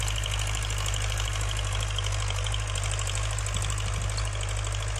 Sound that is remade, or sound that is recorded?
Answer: recorded